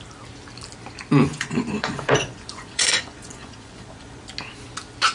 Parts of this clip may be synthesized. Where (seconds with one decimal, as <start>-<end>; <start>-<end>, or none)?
1.3-4.2